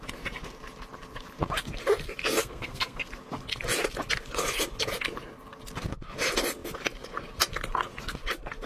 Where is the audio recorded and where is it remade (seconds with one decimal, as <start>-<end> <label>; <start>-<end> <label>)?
0.0-2.4 recorded; 2.4-3.1 remade; 3.1-8.7 recorded

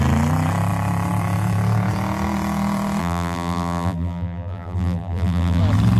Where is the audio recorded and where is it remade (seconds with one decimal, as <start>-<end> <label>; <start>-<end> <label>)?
0.0-3.0 recorded; 3.0-5.6 remade; 5.6-6.0 recorded